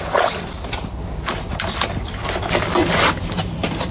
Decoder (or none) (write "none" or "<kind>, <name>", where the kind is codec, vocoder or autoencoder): none